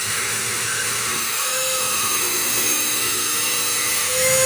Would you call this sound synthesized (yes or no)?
yes